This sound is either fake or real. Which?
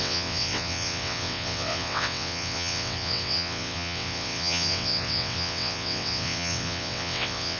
fake